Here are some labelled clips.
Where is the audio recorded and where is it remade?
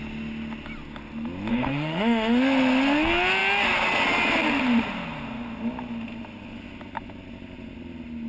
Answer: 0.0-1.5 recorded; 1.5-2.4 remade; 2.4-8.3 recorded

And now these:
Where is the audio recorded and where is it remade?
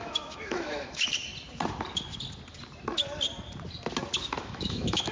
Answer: 0.0-1.3 remade; 1.3-4.4 recorded; 4.4-5.1 remade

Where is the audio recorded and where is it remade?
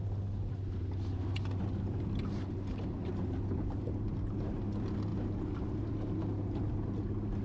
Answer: 0.0-7.4 recorded